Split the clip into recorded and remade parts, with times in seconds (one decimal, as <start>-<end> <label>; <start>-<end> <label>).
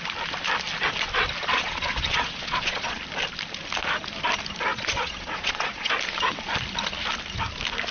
0.0-1.5 recorded; 1.5-3.0 remade; 3.0-4.7 recorded; 4.7-5.9 remade; 5.9-7.9 recorded